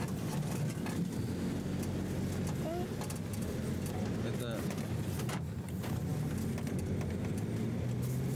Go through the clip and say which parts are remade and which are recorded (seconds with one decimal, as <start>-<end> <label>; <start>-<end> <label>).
0.0-8.3 recorded